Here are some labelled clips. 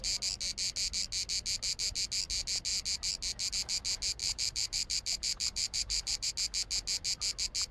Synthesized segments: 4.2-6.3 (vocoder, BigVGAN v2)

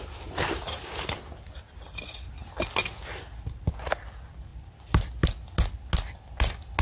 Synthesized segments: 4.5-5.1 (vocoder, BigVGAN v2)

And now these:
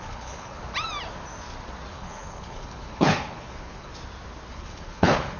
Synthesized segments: 0.0-0.6 (codec, HILCodec); 1.9-3.9; 4.5-5.4

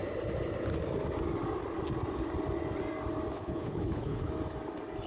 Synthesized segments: 3.3-4.3 (codec, HILCodec)

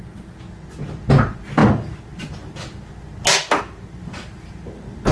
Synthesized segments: none